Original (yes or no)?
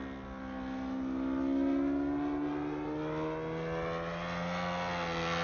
yes